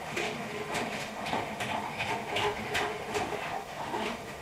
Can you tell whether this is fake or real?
fake